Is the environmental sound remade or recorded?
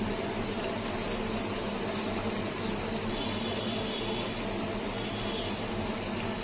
recorded